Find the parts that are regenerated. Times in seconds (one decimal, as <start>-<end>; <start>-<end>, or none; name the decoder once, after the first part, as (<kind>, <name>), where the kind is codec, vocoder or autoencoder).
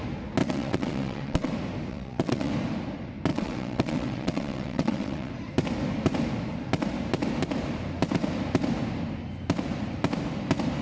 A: 0.4-1.5 (vocoder, WaveNeXt); 1.9-2.5; 3.3-5.3